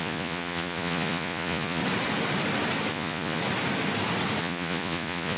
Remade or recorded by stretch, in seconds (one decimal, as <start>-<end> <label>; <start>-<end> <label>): 0.0-1.8 remade; 1.8-2.9 recorded; 2.9-3.4 remade; 3.4-4.4 recorded; 4.4-5.4 remade